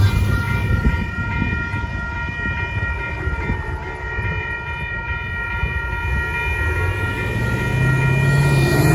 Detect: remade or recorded recorded